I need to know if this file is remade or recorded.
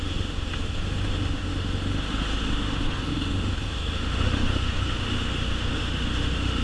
remade